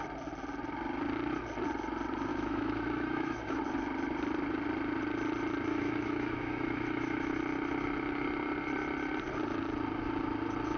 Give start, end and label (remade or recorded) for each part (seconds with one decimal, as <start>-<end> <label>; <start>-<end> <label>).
0.0-2.3 recorded; 2.3-3.6 remade; 3.6-5.7 recorded; 5.7-7.3 remade; 7.3-10.8 recorded